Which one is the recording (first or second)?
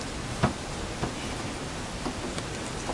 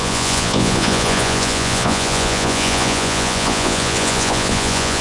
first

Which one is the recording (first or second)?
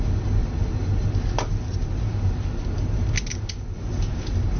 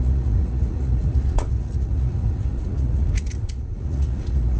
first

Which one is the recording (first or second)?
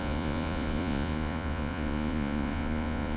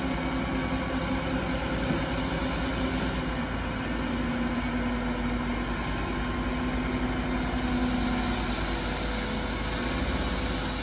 second